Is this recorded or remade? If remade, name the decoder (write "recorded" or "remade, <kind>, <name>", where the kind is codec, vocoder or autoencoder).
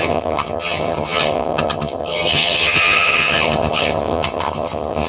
remade, vocoder, HiFi-GAN